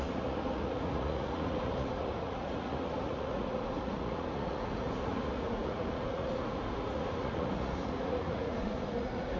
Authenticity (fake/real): fake